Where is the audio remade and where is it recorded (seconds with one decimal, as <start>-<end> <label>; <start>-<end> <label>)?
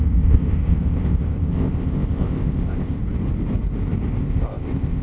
0.0-3.0 remade; 3.0-4.2 recorded; 4.2-5.0 remade